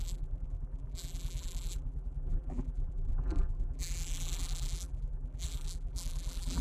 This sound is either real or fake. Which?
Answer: fake